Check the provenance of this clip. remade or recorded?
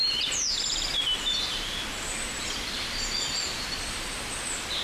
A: recorded